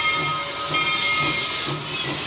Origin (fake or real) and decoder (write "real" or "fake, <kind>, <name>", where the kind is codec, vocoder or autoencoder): real